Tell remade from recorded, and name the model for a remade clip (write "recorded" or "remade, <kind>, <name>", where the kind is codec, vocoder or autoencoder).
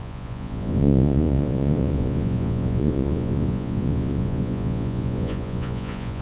remade, vocoder, Vocos